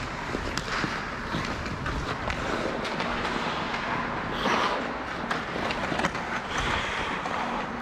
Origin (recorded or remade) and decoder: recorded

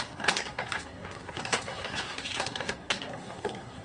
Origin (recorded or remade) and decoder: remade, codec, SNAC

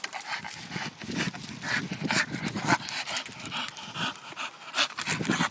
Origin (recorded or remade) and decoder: recorded